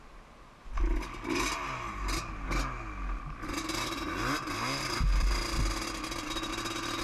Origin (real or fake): real